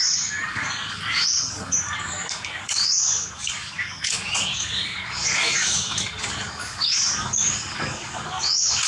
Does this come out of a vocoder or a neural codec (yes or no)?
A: yes